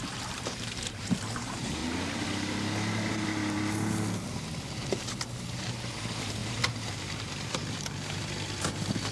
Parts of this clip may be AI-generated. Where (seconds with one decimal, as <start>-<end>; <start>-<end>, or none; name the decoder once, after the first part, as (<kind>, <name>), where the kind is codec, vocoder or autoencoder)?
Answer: 0.0-1.8 (vocoder, BigVGAN v2); 5.2-9.1